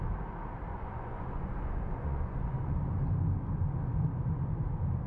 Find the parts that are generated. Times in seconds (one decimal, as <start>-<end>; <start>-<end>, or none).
0.7-2.8